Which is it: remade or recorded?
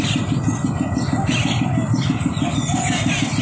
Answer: recorded